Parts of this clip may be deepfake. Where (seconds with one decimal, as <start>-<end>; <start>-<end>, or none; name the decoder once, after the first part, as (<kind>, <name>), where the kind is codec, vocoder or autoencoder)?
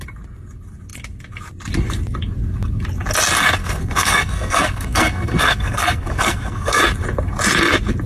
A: 3.6-6.8 (codec, SNAC)